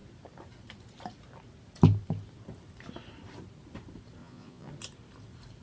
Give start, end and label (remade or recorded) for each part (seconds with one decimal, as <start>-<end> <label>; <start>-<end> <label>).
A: 0.0-4.2 recorded; 4.2-4.7 remade; 4.7-5.6 recorded